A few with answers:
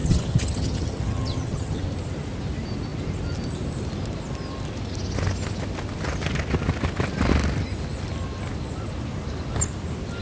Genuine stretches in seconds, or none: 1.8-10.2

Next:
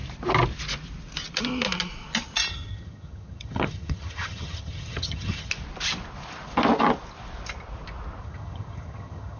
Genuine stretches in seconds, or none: 0.0-2.5; 5.5-8.2